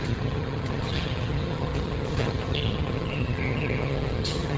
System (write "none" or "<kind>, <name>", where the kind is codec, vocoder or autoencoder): vocoder, HiFi-GAN